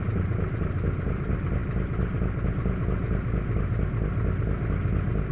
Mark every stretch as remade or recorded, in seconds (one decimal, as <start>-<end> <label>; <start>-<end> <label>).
0.0-5.3 recorded